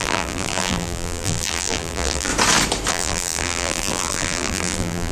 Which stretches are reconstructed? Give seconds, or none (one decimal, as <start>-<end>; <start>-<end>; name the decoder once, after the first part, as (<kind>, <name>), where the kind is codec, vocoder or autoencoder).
0.0-2.3 (vocoder, BigVGAN v2); 2.9-5.1